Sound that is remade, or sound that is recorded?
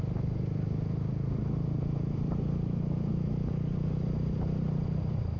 recorded